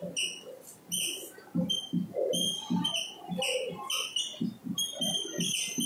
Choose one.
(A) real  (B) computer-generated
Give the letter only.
A